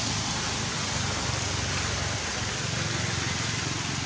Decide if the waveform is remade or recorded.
recorded